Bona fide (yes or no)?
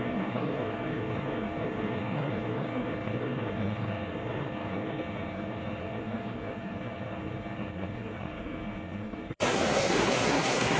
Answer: no